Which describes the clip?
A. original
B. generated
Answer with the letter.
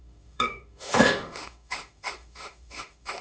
B